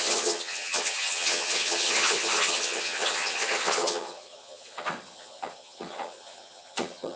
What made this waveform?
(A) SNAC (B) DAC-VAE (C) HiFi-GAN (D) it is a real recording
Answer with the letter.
C